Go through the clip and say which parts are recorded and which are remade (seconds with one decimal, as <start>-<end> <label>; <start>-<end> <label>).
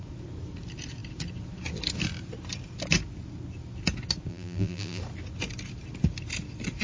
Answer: 0.0-4.3 recorded; 4.3-5.0 remade; 5.0-6.8 recorded